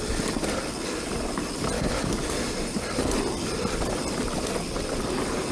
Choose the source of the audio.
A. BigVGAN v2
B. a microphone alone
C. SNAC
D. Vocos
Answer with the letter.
A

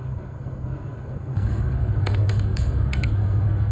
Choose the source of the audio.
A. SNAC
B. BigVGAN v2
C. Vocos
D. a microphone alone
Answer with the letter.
A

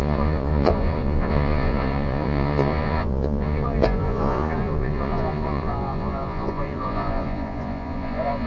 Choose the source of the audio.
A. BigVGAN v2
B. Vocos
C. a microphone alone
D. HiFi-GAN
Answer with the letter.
B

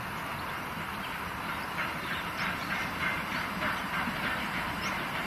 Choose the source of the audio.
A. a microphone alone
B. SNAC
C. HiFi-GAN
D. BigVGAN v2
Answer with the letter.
A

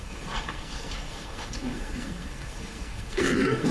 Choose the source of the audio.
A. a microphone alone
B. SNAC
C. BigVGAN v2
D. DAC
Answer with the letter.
B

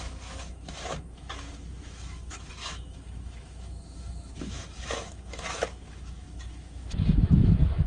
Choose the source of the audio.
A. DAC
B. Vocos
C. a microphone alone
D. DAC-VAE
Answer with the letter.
D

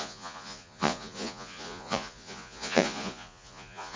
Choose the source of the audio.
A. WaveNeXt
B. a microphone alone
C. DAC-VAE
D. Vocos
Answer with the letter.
D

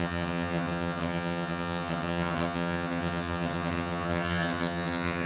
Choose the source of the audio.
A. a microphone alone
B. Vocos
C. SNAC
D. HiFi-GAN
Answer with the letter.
D